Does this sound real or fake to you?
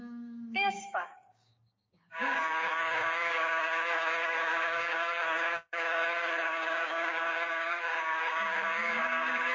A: fake